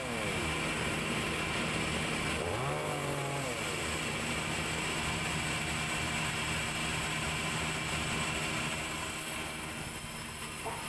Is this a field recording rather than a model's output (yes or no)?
yes